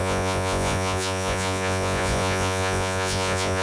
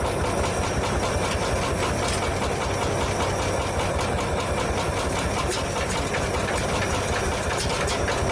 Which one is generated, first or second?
first